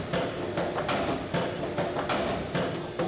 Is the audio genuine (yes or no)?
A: yes